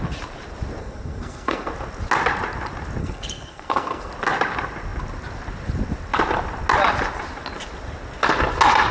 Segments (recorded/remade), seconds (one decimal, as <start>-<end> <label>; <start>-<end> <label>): 0.0-0.8 recorded; 0.8-1.7 remade; 1.7-3.0 recorded; 3.0-4.1 remade; 4.1-8.9 recorded